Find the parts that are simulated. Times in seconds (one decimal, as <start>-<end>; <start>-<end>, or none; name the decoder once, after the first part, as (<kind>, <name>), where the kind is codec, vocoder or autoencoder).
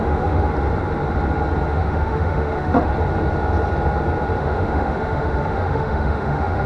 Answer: 0.0-0.5 (autoencoder, DAC-VAE); 1.7-2.9; 4.4-6.7